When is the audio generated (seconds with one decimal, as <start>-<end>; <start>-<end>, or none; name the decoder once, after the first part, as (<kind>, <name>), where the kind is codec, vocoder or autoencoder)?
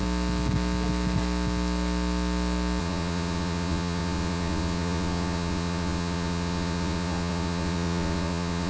2.8-8.7 (vocoder, Vocos)